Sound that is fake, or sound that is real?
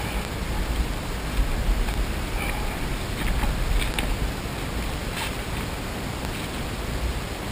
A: real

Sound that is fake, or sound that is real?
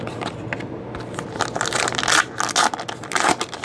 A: real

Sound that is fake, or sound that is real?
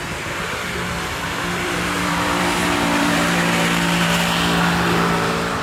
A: fake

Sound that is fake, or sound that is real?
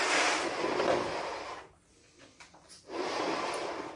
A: fake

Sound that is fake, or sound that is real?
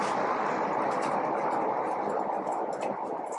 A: real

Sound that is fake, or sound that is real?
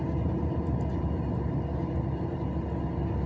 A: real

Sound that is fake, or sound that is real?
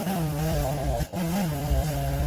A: fake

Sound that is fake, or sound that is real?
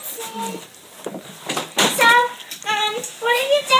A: real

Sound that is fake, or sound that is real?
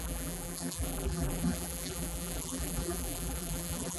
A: fake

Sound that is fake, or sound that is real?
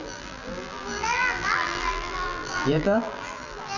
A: fake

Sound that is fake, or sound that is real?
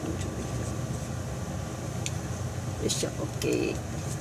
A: real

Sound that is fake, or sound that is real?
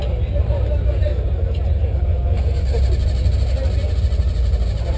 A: real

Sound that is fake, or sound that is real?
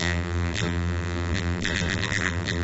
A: fake